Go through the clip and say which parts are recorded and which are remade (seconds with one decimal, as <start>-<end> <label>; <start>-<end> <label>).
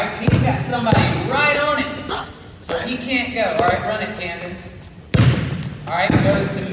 0.0-6.7 recorded